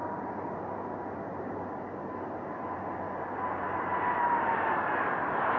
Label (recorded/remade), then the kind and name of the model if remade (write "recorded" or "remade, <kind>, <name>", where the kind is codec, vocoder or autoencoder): recorded